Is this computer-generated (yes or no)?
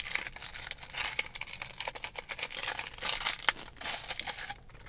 no